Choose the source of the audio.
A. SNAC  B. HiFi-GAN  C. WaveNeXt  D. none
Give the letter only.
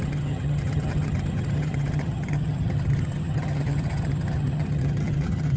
B